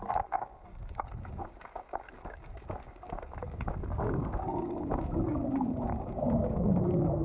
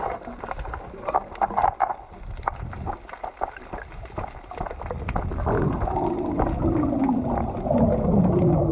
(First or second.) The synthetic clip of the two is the first